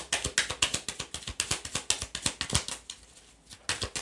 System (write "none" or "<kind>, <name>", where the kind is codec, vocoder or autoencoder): none